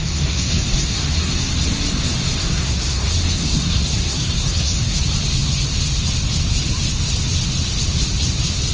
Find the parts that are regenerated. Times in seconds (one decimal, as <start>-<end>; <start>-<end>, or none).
0.0-1.4; 2.4-5.0